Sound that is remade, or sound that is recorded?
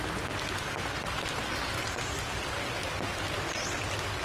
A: recorded